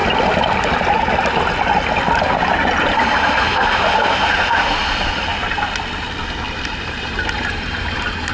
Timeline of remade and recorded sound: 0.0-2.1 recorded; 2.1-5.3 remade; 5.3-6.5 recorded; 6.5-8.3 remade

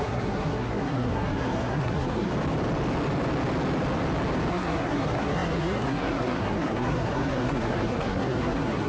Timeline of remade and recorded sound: 0.0-2.3 remade; 2.3-4.5 recorded; 4.5-8.9 remade

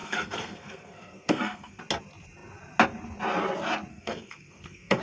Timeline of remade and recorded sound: 0.0-1.8 remade; 1.8-3.9 recorded; 3.9-5.0 remade

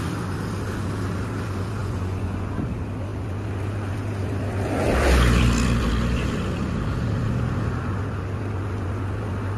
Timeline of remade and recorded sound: 0.0-1.8 recorded; 1.8-2.6 remade; 2.6-9.6 recorded

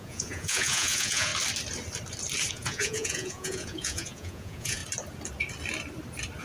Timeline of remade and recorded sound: 0.0-1.3 remade; 1.3-2.5 recorded; 2.5-4.8 remade; 4.8-6.4 recorded

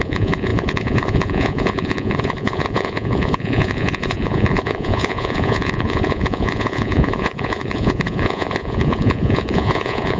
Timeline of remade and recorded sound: 0.0-10.2 remade